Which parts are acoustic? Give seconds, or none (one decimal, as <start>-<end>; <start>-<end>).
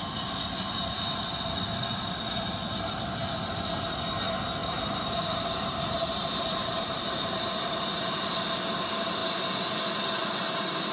0.0-4.6; 8.3-10.9